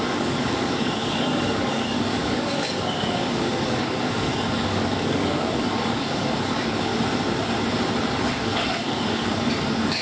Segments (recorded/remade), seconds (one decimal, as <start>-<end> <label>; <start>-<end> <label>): 0.0-6.9 remade; 6.9-8.2 recorded; 8.2-10.0 remade